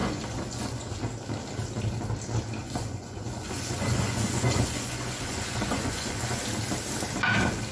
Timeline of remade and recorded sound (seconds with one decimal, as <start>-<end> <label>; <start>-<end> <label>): 0.0-0.9 remade; 0.9-2.6 recorded; 2.6-6.4 remade; 6.4-7.7 recorded